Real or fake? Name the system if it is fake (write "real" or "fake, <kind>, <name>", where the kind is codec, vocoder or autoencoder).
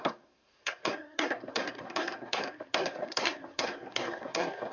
fake, codec, SNAC